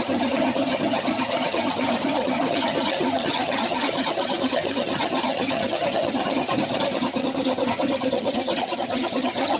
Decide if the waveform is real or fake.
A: fake